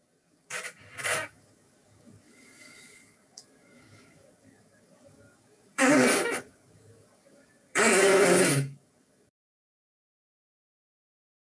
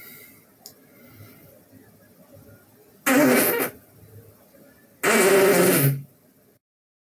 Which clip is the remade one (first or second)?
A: first